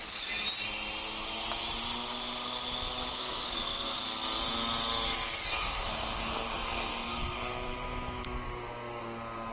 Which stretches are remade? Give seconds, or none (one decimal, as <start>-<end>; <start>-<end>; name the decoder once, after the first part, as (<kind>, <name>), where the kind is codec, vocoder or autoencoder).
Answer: 3.1-4.0 (codec, SNAC); 5.6-8.2